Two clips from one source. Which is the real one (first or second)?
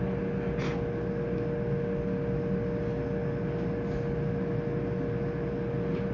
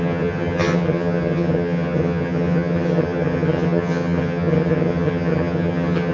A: first